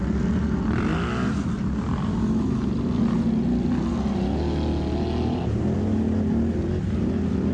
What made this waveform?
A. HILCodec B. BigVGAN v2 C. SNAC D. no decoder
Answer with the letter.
D